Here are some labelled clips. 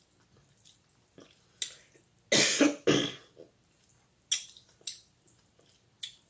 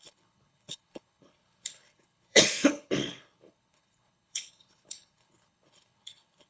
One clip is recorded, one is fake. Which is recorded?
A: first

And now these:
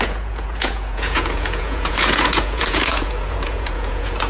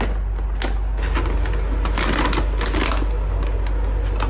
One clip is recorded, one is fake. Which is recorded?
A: second